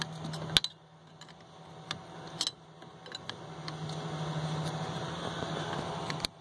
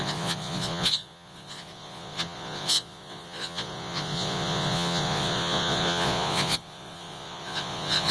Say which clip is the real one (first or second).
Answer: first